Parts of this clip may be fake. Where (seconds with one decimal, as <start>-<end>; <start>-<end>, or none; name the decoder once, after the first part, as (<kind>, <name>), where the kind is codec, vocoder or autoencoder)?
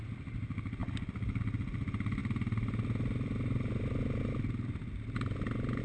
none